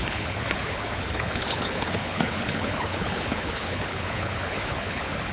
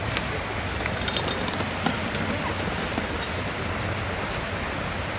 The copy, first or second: first